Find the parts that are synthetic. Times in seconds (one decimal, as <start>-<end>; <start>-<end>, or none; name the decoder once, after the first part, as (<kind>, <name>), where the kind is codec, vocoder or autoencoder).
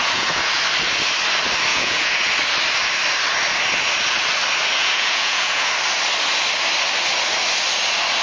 0.0-0.6 (vocoder, Vocos); 1.7-2.2; 4.8-5.7